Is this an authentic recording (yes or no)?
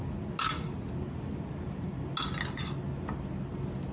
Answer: yes